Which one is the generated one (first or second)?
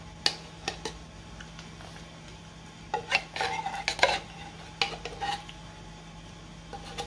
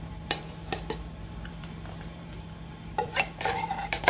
second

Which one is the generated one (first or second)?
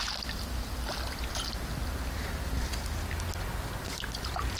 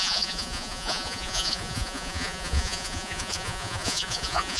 second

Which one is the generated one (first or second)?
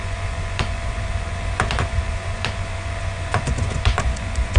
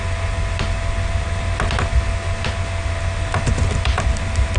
first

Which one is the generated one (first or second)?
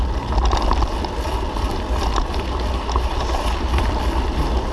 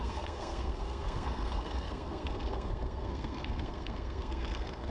second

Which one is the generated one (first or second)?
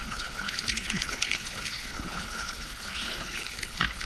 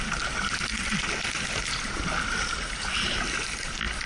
first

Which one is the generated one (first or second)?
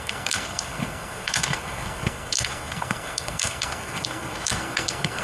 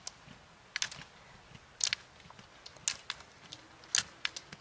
first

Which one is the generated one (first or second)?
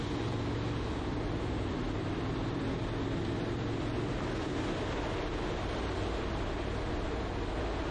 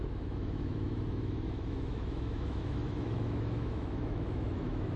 second